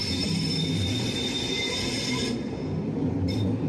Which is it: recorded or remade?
recorded